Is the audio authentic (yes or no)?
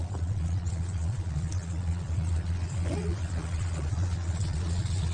no